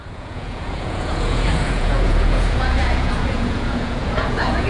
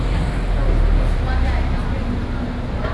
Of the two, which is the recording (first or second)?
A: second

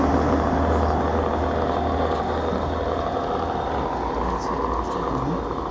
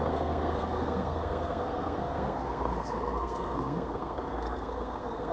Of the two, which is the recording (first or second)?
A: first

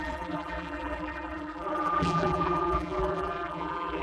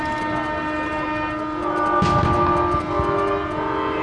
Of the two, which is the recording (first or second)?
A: second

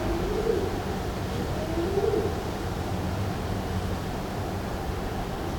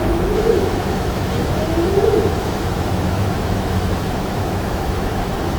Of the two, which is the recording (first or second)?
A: first